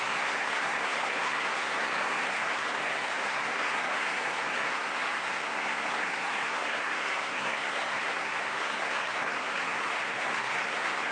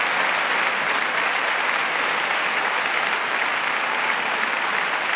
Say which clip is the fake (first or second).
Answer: first